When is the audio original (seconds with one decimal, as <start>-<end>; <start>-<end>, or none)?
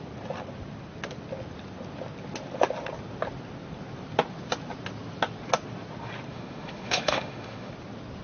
0.0-6.3; 7.7-8.2